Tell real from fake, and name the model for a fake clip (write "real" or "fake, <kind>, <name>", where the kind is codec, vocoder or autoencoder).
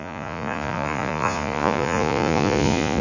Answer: fake, vocoder, Vocos